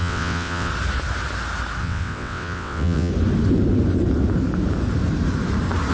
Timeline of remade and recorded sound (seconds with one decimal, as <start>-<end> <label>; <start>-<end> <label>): 0.0-0.7 remade; 0.7-1.8 recorded; 1.8-3.1 remade; 3.1-5.9 recorded